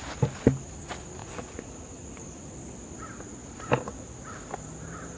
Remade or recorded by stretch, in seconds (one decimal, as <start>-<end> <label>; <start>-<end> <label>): 0.0-1.2 recorded; 1.2-2.4 remade; 2.4-5.2 recorded